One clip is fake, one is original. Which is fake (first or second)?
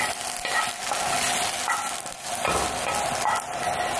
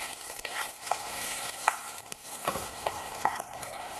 second